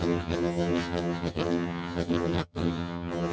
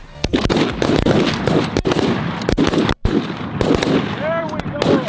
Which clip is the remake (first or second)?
first